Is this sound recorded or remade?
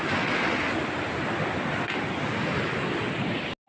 recorded